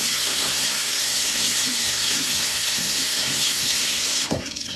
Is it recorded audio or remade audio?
remade